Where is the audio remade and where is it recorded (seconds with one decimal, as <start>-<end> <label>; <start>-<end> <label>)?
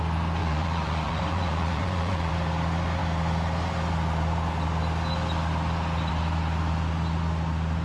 0.0-0.4 recorded; 0.4-2.3 remade; 2.3-7.8 recorded